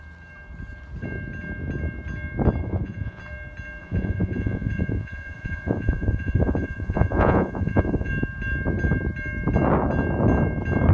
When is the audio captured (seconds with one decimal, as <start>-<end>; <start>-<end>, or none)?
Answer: 0.0-2.6; 3.2-3.8; 8.1-10.9